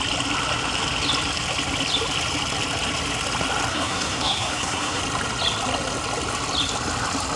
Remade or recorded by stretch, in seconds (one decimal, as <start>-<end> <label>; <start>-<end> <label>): 0.0-3.7 recorded; 3.7-5.0 remade; 5.0-7.4 recorded